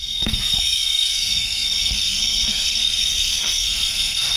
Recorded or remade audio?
remade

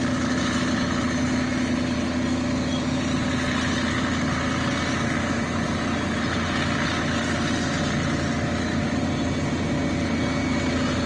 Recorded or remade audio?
recorded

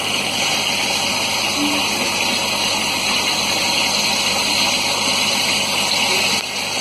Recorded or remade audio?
recorded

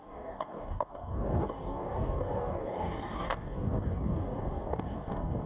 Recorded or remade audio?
remade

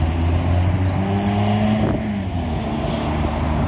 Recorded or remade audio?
recorded